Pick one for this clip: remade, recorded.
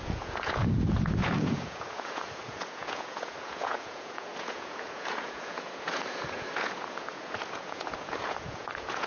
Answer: remade